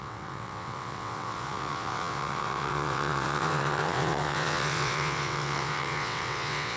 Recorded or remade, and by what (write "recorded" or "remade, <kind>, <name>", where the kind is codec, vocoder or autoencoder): remade, vocoder, WaveNeXt